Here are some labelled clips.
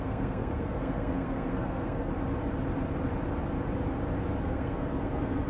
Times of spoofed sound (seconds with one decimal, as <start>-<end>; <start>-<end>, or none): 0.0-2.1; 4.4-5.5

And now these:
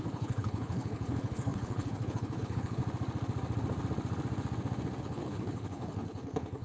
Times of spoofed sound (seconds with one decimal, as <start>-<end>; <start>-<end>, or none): 0.0-2.8; 5.0-6.6

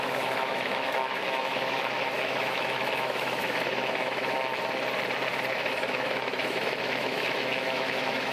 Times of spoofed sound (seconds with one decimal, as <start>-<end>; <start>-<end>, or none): 0.0-4.5; 5.5-8.3

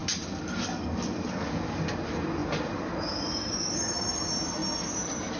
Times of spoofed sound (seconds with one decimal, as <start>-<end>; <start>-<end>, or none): none

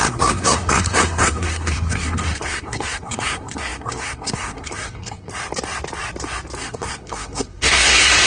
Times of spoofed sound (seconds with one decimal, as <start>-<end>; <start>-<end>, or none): 0.0-5.3; 6.6-8.3